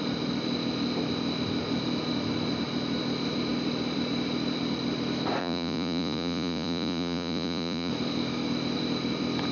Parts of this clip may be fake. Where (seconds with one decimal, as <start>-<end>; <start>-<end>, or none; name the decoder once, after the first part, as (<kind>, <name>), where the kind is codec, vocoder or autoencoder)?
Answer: 5.4-7.9 (vocoder, Vocos)